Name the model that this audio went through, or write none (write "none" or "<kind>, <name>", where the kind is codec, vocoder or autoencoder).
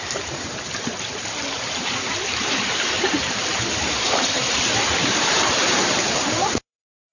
vocoder, BigVGAN v2